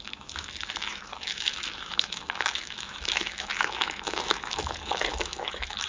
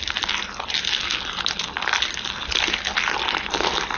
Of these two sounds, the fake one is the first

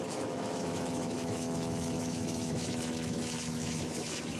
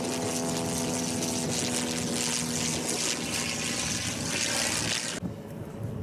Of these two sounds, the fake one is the first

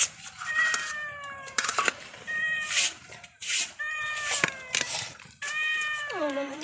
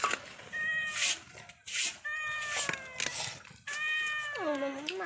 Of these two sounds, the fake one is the first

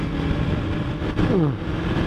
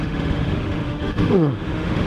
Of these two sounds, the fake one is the second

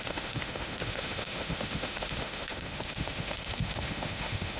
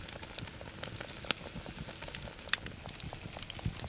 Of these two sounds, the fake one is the first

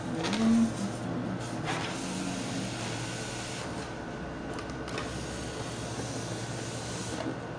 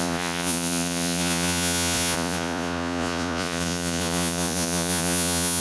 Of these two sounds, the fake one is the second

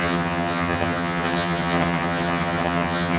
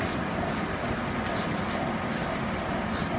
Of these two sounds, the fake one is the first